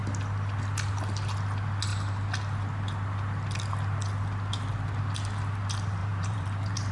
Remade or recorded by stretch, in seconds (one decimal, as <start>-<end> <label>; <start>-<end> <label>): 0.0-6.0 recorded; 6.0-6.9 remade